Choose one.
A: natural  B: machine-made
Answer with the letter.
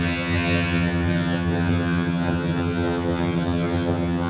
B